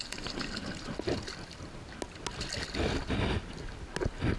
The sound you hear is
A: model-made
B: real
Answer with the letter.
B